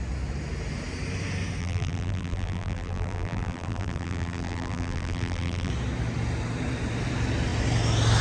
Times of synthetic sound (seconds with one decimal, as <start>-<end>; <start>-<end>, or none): 1.6-5.7